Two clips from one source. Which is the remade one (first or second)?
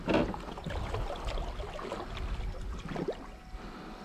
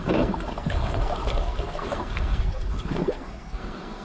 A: second